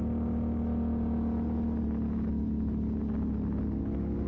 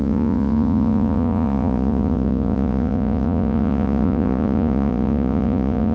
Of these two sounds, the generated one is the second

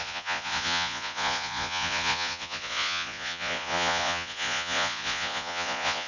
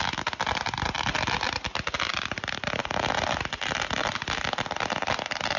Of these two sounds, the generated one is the first